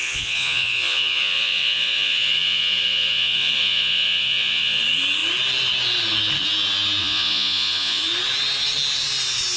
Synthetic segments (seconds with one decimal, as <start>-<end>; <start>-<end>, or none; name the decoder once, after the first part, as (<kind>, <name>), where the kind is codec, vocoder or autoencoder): 0.0-4.8 (vocoder, Vocos); 7.0-8.0